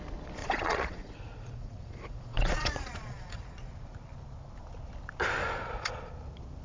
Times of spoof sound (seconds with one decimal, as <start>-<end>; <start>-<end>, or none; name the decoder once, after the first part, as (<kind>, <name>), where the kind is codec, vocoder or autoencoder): 0.4-3.7 (vocoder, Vocos); 5.4-6.1